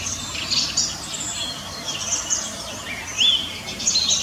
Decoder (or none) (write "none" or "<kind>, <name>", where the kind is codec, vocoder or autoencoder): none